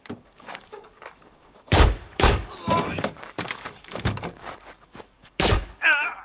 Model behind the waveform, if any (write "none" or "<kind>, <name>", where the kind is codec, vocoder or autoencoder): codec, DAC